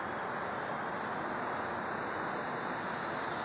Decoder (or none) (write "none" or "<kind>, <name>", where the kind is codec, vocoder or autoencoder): none